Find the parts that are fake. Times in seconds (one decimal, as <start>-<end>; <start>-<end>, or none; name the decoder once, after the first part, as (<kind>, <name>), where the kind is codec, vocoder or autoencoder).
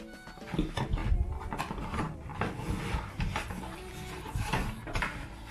none